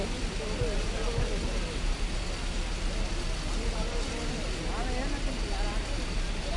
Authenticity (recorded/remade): recorded